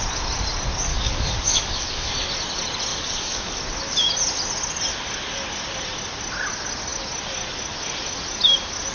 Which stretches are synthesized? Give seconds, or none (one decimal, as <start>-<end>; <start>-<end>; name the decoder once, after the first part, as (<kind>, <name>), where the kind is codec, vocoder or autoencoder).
0.9-2.1 (codec, DAC); 2.9-3.6